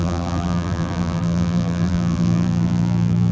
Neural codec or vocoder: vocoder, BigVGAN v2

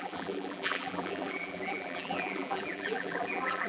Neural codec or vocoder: vocoder, BigVGAN v2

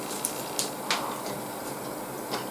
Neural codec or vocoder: none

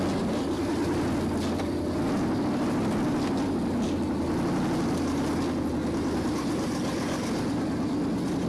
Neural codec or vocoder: vocoder, BigVGAN v2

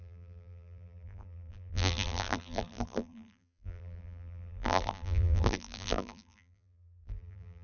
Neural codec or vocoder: vocoder, BigVGAN v2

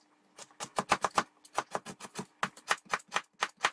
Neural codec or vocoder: none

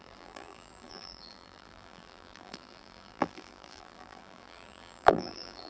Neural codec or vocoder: vocoder, BigVGAN v2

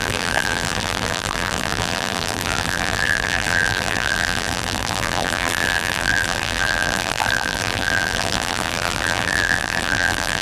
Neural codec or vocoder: vocoder, BigVGAN v2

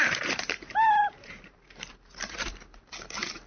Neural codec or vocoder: vocoder, BigVGAN v2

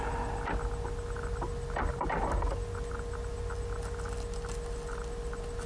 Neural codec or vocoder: none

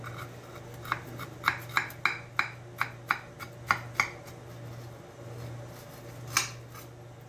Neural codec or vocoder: none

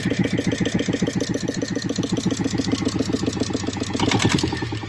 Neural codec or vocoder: none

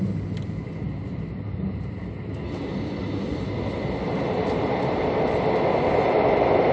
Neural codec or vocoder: none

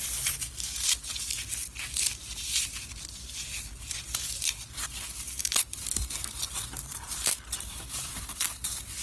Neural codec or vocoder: vocoder, BigVGAN v2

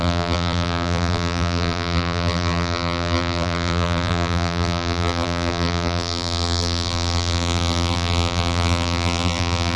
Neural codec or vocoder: vocoder, BigVGAN v2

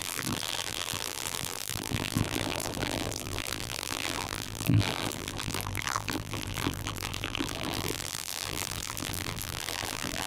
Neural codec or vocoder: vocoder, BigVGAN v2